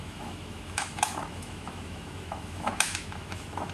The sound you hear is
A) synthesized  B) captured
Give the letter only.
A